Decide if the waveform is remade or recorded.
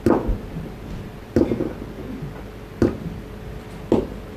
recorded